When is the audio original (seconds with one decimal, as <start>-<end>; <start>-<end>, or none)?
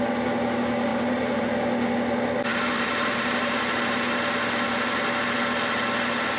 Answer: 0.0-0.9; 1.5-2.5; 3.8-6.4